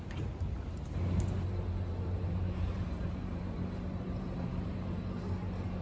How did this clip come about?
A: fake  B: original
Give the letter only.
A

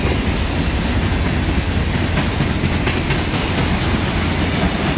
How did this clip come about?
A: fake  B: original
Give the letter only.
B